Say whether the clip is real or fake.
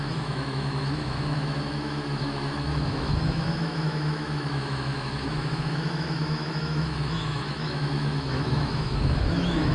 fake